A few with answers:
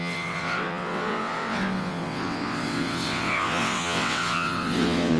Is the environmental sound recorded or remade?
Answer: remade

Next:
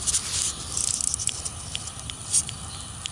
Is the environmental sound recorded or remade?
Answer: recorded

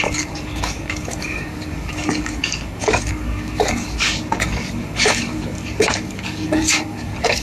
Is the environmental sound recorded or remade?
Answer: remade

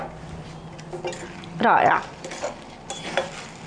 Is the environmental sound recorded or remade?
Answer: recorded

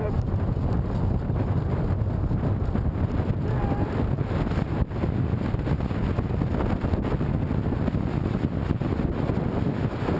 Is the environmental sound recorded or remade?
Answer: recorded